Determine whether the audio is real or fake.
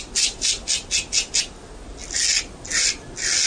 real